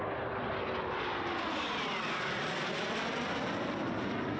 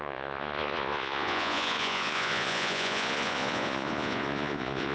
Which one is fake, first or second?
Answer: second